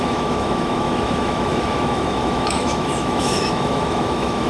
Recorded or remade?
remade